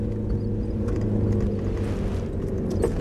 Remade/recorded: recorded